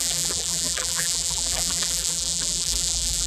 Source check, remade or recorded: remade